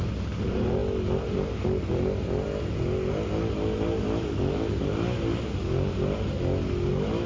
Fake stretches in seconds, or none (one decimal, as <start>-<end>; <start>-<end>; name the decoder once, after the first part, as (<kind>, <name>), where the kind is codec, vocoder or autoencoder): none

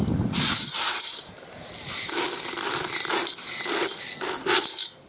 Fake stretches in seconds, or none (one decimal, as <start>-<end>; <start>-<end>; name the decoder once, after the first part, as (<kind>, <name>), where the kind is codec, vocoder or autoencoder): none

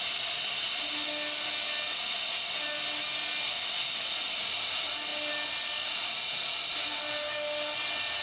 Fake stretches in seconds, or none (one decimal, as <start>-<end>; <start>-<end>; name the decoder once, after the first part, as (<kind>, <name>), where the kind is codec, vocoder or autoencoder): none

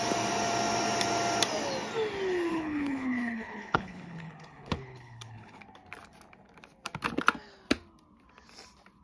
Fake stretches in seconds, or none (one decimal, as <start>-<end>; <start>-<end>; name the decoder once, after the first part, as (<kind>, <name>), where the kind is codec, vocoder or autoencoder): 2.5-5.6 (codec, HILCodec)